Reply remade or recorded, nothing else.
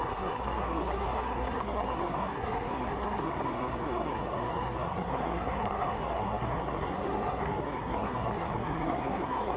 remade